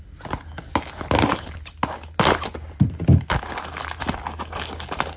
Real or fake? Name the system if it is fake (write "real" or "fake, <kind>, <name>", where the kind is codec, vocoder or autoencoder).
real